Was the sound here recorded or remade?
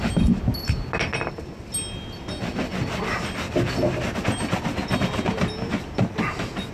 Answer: recorded